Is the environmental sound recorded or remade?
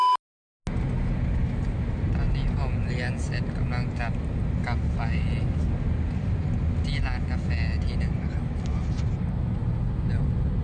recorded